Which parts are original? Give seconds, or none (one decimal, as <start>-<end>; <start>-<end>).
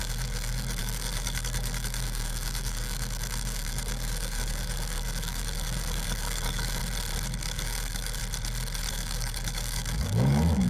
6.8-7.4; 8.2-8.9